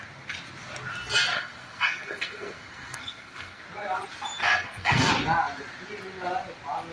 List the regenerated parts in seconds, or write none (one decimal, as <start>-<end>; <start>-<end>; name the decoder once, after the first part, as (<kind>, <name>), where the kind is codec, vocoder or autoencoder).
1.3-3.6 (codec, SNAC); 4.4-5.1